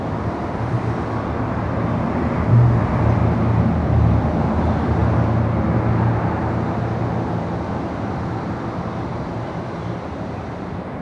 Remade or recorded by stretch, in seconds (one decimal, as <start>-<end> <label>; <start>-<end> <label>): 0.0-3.2 remade; 3.2-4.6 recorded; 4.6-5.0 remade; 5.0-8.8 recorded; 8.8-11.0 remade